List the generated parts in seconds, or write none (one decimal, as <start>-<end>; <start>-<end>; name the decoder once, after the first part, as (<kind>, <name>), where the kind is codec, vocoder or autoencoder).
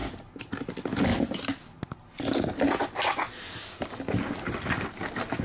0.0-0.6 (vocoder, BigVGAN v2)